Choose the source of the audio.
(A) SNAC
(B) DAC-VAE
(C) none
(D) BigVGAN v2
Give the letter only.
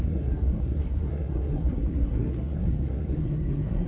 A